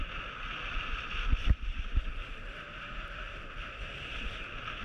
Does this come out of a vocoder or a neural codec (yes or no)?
no